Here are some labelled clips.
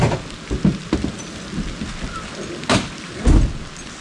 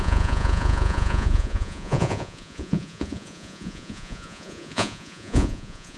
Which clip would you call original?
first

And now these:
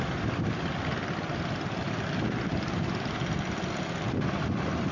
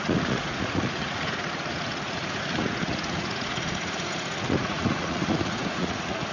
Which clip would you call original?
first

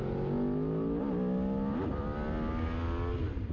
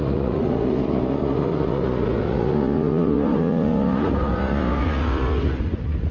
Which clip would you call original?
first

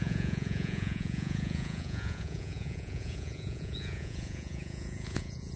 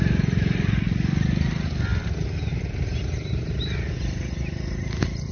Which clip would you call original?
second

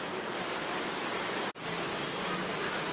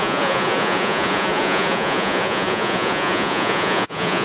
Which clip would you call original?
first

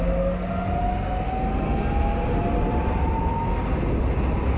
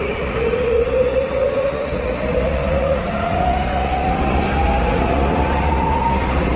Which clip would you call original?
first